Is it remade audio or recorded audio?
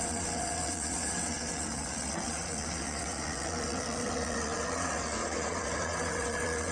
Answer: remade